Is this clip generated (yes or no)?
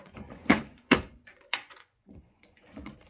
yes